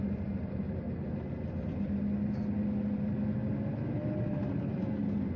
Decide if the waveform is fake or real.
real